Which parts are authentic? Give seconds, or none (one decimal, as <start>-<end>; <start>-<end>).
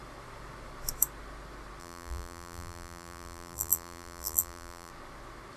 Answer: 0.0-1.8; 4.9-5.6